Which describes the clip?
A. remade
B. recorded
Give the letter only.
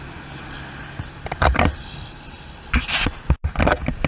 B